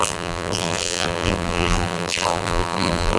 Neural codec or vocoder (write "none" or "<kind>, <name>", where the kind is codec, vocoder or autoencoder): vocoder, BigVGAN v2